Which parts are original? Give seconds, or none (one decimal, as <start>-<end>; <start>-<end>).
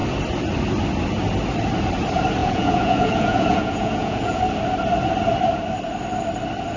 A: 0.0-2.4; 4.4-6.8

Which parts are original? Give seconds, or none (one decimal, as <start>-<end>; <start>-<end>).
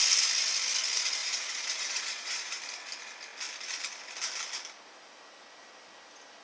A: 0.0-1.2; 2.6-6.4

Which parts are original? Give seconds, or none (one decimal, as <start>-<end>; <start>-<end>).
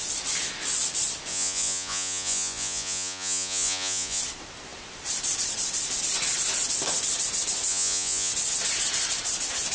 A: 0.0-1.3; 4.2-7.7; 8.3-9.7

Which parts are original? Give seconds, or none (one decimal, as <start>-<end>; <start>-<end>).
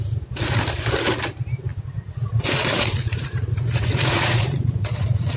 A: 0.0-1.7; 4.9-5.4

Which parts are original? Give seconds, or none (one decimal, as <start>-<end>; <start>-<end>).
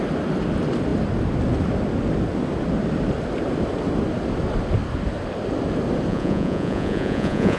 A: 0.0-6.1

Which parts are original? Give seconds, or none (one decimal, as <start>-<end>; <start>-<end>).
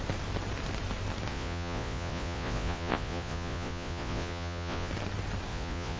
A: 0.0-1.3; 4.9-5.5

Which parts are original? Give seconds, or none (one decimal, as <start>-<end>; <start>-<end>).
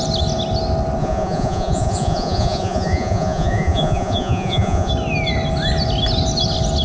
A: 0.0-1.0; 4.9-6.8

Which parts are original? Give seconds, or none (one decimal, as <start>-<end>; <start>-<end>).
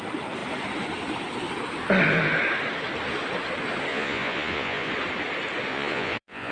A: 0.0-3.9; 4.9-5.7